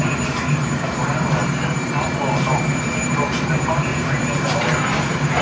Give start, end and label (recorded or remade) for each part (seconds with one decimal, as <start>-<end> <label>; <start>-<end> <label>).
0.0-5.4 remade